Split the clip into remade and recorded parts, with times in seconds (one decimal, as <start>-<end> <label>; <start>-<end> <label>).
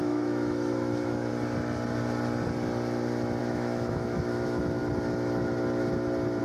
0.0-1.3 remade; 1.3-3.4 recorded; 3.4-4.8 remade; 4.8-6.4 recorded